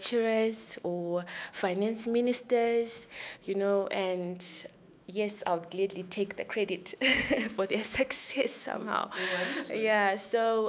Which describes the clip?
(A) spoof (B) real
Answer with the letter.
A